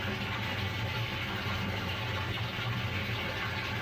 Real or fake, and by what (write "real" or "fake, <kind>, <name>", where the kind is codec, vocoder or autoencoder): real